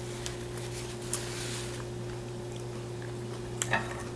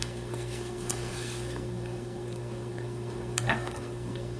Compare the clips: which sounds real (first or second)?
first